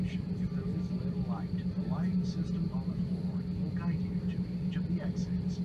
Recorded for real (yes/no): yes